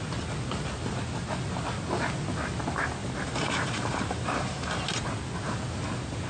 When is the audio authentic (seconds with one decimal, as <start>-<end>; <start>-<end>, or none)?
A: 0.0-3.0; 5.0-6.3